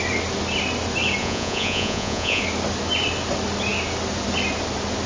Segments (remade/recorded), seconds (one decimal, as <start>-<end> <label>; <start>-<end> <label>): 0.0-1.2 recorded; 1.2-2.4 remade; 2.4-5.1 recorded